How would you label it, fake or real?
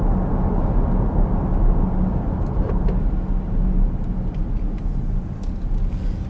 real